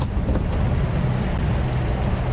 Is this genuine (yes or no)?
yes